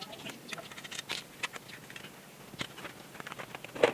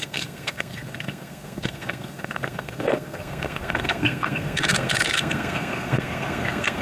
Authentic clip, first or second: first